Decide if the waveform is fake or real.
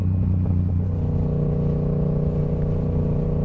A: real